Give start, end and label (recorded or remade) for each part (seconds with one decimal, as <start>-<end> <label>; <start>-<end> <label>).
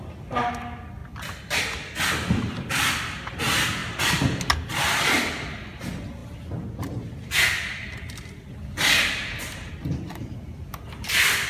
0.0-11.5 recorded